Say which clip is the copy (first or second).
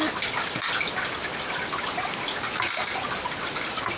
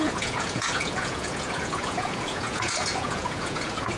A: second